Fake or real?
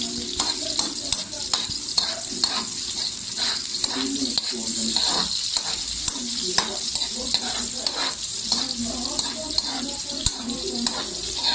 real